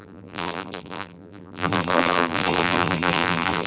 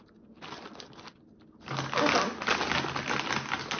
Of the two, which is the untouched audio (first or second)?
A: second